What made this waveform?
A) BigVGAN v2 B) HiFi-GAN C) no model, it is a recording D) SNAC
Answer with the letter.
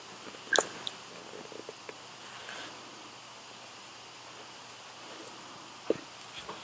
C